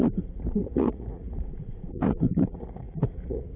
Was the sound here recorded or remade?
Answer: remade